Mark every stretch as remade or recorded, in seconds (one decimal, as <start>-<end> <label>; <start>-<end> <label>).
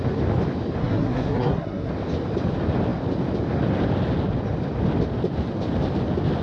0.0-0.8 recorded; 0.8-1.9 remade; 1.9-6.4 recorded